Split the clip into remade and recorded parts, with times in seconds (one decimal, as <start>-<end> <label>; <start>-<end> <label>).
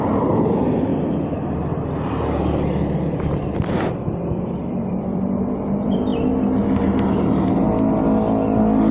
0.0-0.9 remade; 0.9-4.4 recorded; 4.4-6.1 remade; 6.1-8.9 recorded